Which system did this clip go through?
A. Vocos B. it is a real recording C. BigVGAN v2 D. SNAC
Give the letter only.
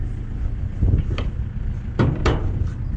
B